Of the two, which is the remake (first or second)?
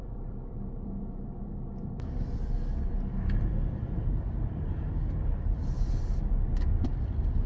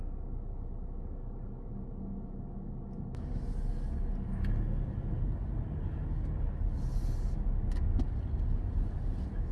first